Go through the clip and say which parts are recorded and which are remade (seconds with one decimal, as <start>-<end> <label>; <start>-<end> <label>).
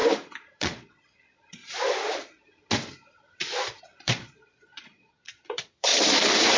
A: 0.0-0.6 recorded; 0.6-1.6 remade; 1.6-3.8 recorded; 3.8-5.9 remade; 5.9-6.6 recorded